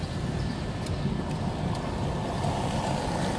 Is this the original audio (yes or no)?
yes